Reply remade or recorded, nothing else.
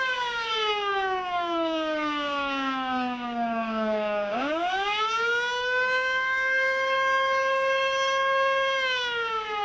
remade